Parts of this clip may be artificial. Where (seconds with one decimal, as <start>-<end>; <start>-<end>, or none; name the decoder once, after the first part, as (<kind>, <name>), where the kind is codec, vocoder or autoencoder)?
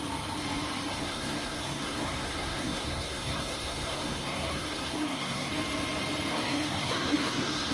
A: 0.9-5.5 (codec, SNAC); 6.3-7.7